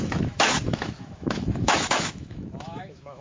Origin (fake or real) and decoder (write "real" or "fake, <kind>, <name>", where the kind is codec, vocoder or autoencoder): fake, autoencoder, DAC-VAE